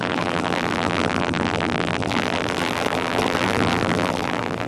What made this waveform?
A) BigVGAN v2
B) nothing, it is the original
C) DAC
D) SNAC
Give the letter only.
A